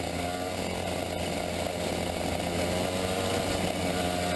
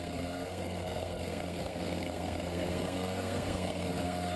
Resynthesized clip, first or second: second